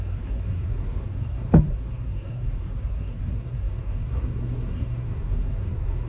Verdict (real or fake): fake